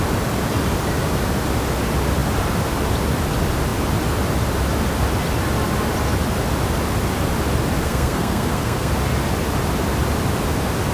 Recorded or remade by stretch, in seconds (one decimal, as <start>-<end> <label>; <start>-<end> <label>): 0.0-7.8 recorded; 7.8-8.9 remade; 8.9-10.9 recorded